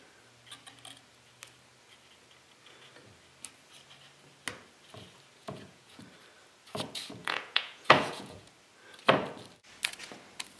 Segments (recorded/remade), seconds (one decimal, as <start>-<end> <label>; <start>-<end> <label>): 0.0-5.4 recorded; 5.4-6.0 remade; 6.0-7.2 recorded; 7.2-8.5 remade; 8.5-10.6 recorded